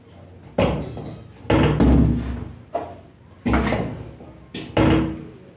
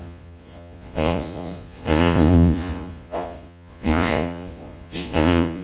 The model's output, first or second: second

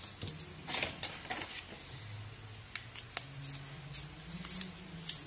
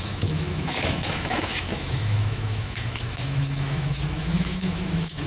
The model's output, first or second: second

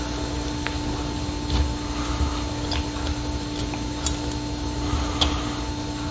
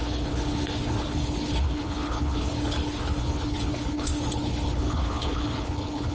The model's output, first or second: second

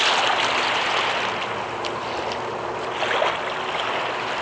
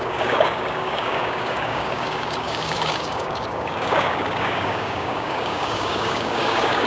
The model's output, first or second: second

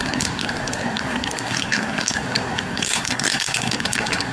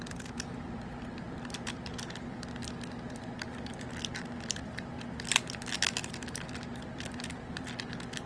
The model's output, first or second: first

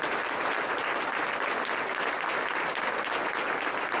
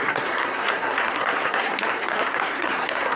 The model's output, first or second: second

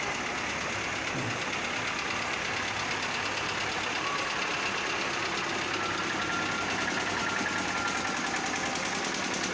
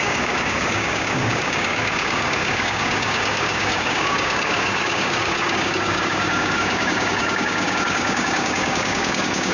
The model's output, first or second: second